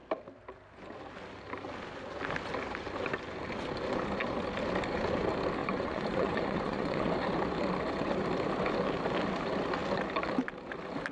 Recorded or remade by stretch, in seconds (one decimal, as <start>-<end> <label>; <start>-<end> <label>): 0.0-5.6 recorded; 5.6-7.1 remade; 7.1-11.1 recorded